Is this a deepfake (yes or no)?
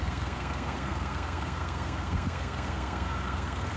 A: yes